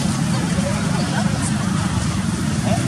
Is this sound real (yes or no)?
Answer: yes